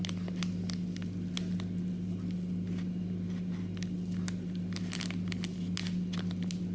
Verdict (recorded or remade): recorded